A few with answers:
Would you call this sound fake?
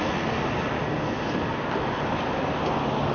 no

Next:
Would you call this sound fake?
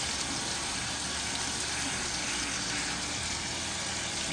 no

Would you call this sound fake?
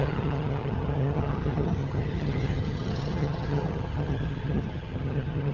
yes